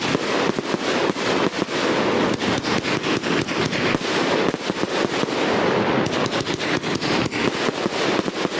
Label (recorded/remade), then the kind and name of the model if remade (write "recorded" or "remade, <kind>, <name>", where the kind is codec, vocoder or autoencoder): recorded